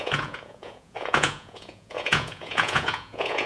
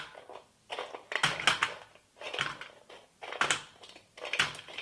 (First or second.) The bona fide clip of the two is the second